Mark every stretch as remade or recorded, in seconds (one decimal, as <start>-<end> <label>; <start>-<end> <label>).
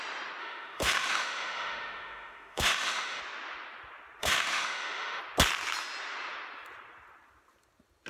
0.0-0.4 recorded; 0.4-3.2 remade; 3.2-4.2 recorded; 4.2-5.2 remade; 5.2-8.1 recorded